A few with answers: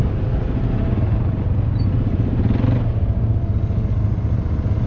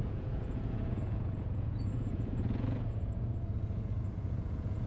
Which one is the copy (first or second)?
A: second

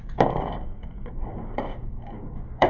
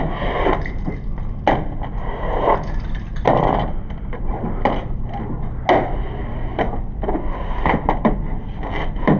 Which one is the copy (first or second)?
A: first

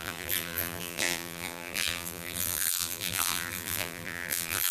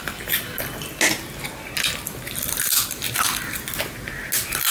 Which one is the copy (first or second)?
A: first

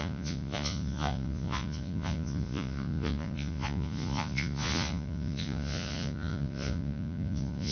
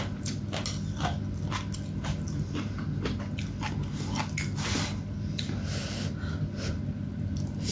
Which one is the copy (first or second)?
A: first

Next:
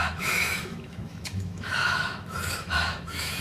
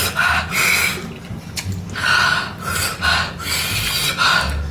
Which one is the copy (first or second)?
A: first